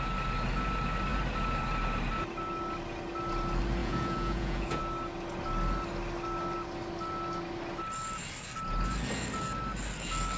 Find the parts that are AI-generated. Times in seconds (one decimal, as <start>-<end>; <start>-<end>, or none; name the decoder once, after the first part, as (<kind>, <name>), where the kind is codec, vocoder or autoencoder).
3.8-4.8 (vocoder, Vocos)